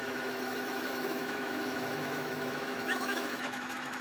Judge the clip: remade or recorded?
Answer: remade